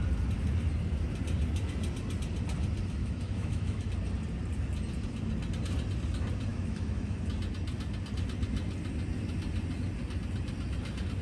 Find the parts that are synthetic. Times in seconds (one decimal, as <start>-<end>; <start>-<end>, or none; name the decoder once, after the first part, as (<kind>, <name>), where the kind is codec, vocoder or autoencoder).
3.0-3.9 (autoencoder, DAC-VAE); 6.5-7.2